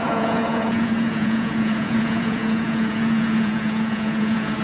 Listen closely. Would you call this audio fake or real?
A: fake